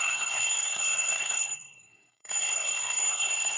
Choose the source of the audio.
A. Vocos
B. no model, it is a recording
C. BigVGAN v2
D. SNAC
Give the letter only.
D